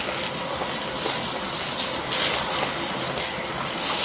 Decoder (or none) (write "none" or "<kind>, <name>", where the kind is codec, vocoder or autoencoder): none